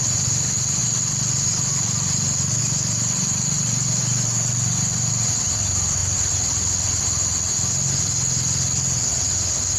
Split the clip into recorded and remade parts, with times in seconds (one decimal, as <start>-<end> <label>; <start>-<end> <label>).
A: 0.0-9.8 recorded